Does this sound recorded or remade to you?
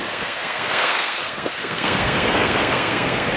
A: remade